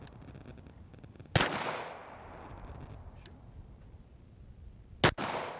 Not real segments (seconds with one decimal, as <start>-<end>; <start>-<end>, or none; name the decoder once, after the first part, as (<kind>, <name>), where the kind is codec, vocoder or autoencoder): none